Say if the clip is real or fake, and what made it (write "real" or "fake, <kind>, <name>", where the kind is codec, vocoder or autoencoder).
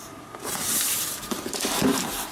real